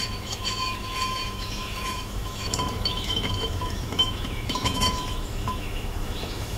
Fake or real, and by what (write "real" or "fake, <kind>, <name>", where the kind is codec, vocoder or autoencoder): fake, autoencoder, DAC-VAE